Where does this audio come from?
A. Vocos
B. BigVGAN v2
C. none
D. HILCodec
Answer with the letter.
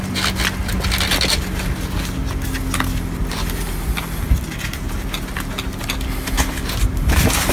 C